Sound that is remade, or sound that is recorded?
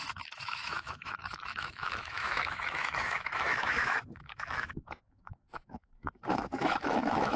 remade